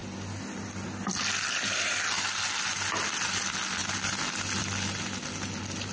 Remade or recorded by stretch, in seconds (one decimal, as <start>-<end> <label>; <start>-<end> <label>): 0.0-5.9 recorded